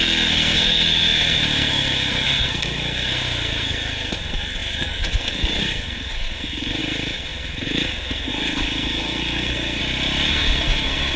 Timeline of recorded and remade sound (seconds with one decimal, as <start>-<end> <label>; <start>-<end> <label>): 0.0-9.8 remade; 9.8-10.3 recorded; 10.3-11.2 remade

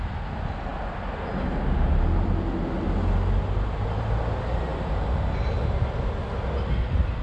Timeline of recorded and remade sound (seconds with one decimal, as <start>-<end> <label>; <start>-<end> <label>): 0.0-7.2 recorded

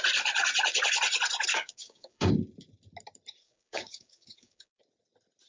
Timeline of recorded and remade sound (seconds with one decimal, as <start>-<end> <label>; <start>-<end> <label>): 0.0-1.5 recorded; 1.5-2.3 remade; 2.3-3.4 recorded; 3.4-4.8 remade; 4.8-5.5 recorded

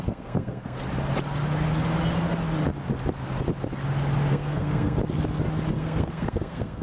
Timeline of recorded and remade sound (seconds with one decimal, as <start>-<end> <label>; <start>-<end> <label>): 0.0-0.8 remade; 0.8-4.3 recorded; 4.3-5.0 remade; 5.0-5.7 recorded; 5.7-6.8 remade

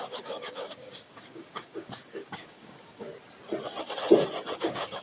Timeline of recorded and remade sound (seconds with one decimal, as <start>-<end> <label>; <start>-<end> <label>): 0.0-3.1 remade; 3.1-4.6 recorded; 4.6-5.0 remade